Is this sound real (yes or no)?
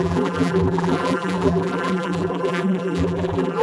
no